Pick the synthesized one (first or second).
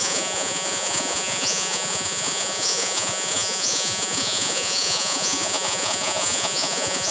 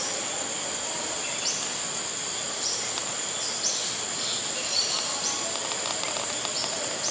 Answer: first